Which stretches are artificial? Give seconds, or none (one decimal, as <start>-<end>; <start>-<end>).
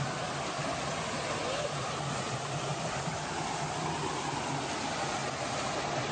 none